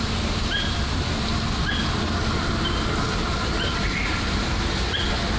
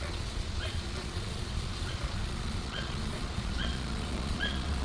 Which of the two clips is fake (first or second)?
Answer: second